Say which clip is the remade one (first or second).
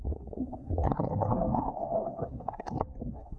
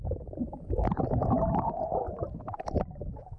first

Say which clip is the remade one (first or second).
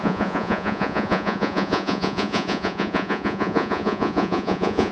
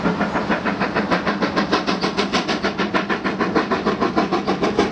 first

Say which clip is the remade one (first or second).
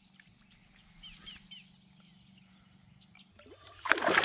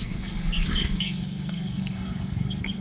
second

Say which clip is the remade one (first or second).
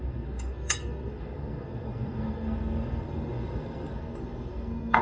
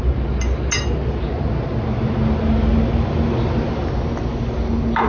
first